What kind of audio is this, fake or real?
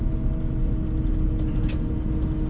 real